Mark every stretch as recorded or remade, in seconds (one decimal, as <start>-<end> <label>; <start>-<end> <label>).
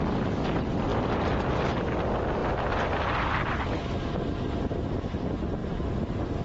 0.0-0.9 recorded; 0.9-1.4 remade; 1.4-6.4 recorded